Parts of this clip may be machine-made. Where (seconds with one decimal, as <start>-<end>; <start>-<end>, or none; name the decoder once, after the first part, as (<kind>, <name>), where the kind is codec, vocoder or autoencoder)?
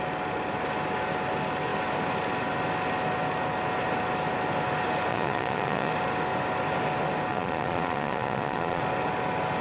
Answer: 5.1-5.9 (vocoder, Vocos); 7.3-8.8